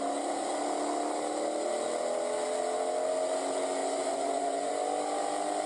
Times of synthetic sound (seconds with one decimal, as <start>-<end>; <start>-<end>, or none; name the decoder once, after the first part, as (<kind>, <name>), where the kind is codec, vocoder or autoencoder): 3.8-4.7 (vocoder, Vocos)